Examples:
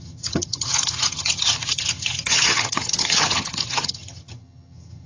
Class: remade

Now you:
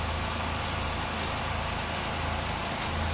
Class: recorded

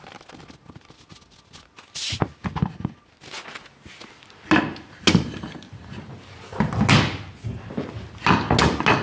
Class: recorded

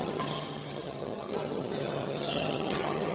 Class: remade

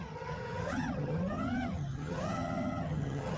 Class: remade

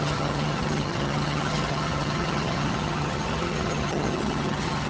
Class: remade